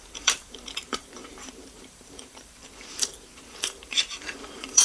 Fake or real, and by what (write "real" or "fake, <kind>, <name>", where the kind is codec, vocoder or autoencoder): fake, vocoder, BigVGAN v2